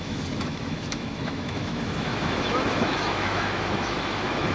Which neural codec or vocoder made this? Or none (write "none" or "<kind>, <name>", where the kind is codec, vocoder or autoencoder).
autoencoder, DAC-VAE